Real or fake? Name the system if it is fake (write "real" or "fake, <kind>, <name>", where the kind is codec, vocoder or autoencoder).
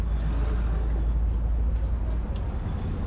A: real